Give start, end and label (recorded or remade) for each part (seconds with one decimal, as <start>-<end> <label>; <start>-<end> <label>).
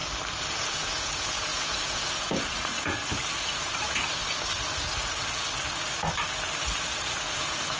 0.0-0.5 recorded; 0.5-3.0 remade; 3.0-3.8 recorded; 3.8-4.2 remade; 4.2-6.9 recorded; 6.9-7.8 remade